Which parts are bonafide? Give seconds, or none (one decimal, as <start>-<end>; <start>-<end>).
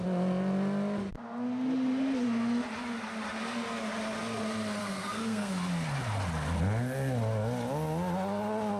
0.0-4.8; 5.5-8.8